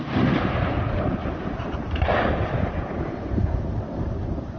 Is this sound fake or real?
fake